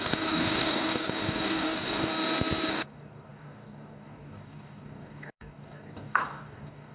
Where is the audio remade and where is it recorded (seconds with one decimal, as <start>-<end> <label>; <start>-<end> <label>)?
0.0-2.1 remade; 2.1-2.7 recorded; 2.7-6.9 remade